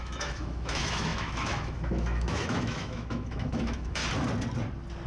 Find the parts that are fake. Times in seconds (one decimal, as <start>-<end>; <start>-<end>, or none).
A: 0.0-4.0